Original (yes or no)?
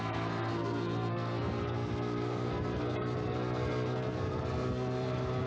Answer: no